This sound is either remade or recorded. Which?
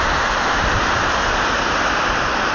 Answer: remade